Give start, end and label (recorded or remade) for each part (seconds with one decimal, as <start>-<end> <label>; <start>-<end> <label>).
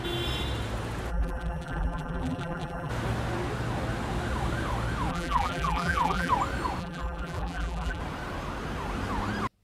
0.0-1.1 recorded; 1.1-2.9 remade; 2.9-5.1 recorded; 5.1-6.3 remade; 6.3-6.8 recorded; 6.8-8.0 remade; 8.0-9.6 recorded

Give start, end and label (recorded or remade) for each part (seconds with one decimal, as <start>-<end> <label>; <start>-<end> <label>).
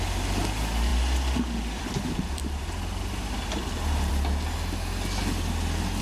0.0-0.9 recorded; 0.9-4.1 remade; 4.1-6.0 recorded